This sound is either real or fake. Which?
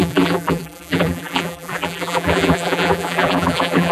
fake